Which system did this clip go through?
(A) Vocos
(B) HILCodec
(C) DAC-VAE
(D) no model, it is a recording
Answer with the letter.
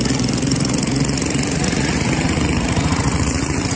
A